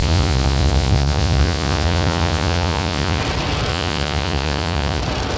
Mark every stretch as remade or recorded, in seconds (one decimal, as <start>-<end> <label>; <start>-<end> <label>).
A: 0.0-3.2 remade; 3.2-3.7 recorded; 3.7-5.0 remade; 5.0-5.4 recorded